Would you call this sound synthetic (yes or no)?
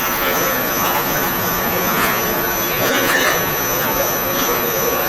yes